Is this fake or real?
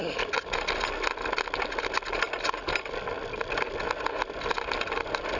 real